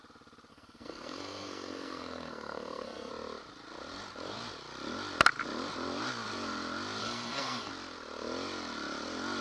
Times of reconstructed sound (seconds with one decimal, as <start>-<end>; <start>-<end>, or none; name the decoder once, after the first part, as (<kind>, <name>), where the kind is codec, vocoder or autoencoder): 0.5-3.1 (codec, SNAC); 7.0-7.7